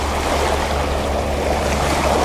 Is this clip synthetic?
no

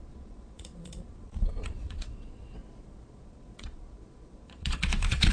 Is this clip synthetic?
yes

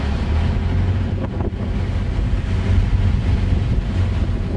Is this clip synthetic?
no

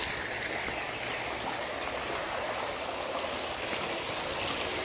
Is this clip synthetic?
no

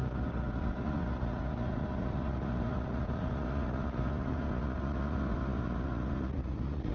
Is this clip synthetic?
yes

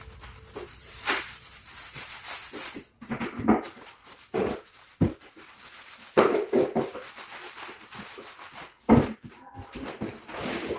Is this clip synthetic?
no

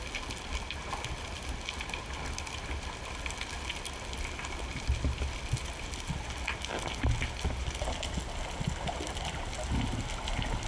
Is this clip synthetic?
no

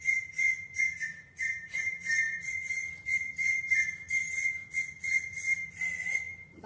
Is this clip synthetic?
yes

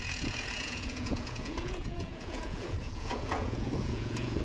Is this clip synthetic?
yes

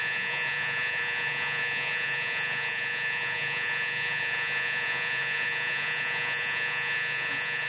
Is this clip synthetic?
yes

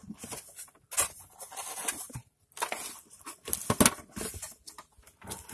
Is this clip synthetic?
no